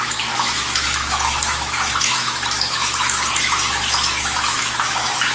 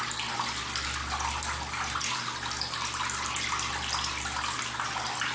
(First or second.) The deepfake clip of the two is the first